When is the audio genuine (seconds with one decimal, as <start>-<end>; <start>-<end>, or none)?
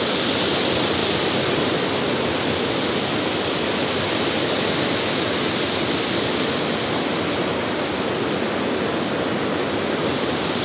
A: 0.0-10.6